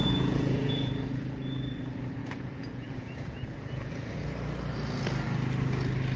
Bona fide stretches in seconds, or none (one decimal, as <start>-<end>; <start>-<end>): 0.9-2.2; 4.1-6.2